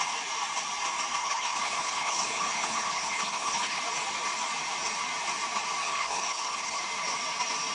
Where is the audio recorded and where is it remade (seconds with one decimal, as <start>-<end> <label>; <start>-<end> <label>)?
0.0-1.2 recorded; 1.2-3.8 remade; 3.8-5.8 recorded; 5.8-6.8 remade; 6.8-7.7 recorded